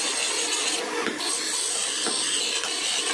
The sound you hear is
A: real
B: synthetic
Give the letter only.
A